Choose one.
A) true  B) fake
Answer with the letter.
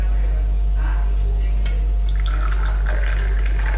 A